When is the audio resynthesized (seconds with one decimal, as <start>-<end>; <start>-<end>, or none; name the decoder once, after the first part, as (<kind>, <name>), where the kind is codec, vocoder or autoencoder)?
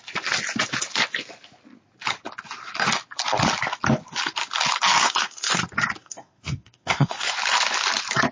5.0-5.5 (codec, SNAC); 6.0-7.3